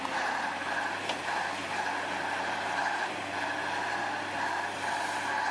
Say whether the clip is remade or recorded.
recorded